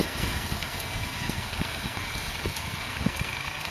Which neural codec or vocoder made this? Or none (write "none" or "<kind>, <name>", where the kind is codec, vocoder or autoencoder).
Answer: codec, SNAC